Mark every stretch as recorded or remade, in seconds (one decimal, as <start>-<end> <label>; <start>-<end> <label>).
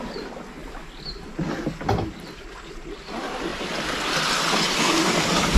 0.0-5.6 recorded